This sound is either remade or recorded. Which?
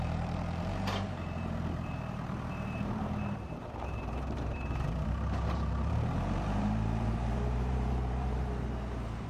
remade